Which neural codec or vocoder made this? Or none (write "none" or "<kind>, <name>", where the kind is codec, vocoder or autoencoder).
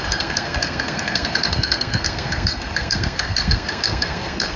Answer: codec, SNAC